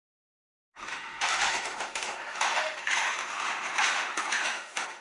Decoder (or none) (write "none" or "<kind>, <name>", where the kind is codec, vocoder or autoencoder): autoencoder, DAC-VAE